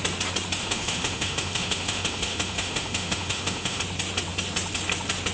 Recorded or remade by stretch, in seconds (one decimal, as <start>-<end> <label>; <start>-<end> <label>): 0.0-0.6 recorded; 0.6-3.8 remade; 3.8-5.3 recorded